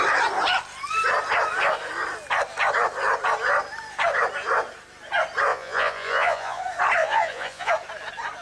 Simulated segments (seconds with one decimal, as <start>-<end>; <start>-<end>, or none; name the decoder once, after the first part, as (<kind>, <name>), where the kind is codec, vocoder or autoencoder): 5.5-6.6 (vocoder, Vocos); 7.0-7.7